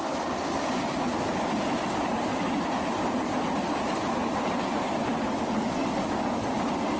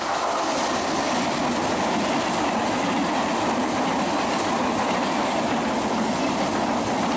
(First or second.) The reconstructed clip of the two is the first